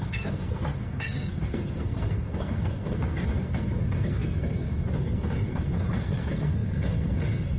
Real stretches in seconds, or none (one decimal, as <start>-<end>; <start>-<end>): none